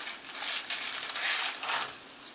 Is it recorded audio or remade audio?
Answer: recorded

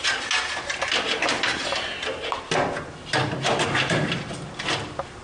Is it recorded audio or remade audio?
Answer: recorded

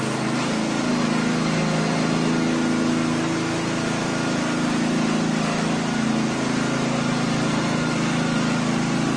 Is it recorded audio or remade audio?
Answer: recorded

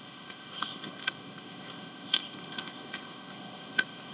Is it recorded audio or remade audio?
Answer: remade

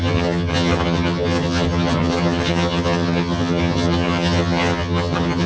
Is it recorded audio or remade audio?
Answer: remade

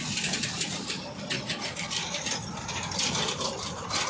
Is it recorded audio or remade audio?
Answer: recorded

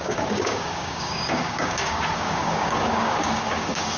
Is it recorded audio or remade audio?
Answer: remade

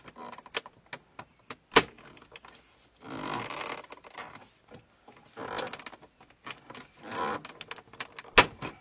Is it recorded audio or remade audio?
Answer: recorded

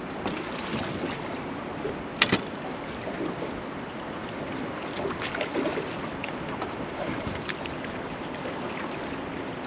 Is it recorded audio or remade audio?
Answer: recorded